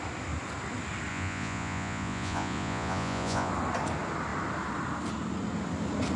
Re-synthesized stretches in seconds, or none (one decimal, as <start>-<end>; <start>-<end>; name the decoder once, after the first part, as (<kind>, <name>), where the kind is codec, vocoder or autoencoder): 1.1-3.5 (vocoder, Vocos)